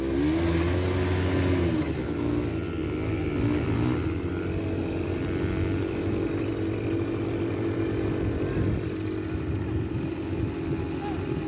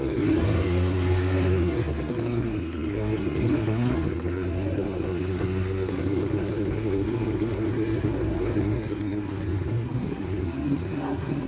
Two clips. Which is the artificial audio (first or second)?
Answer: second